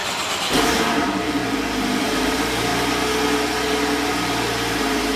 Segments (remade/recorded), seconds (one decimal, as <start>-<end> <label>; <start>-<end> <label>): 0.0-0.8 recorded; 0.8-1.4 remade; 1.4-2.0 recorded; 2.0-2.7 remade; 2.7-4.7 recorded; 4.7-5.2 remade